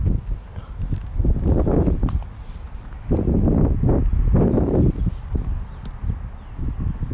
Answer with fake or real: real